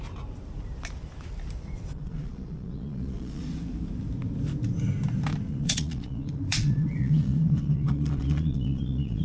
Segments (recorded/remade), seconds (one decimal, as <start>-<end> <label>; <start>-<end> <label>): 0.0-1.9 recorded; 1.9-3.4 remade; 3.4-5.5 recorded; 5.5-9.2 remade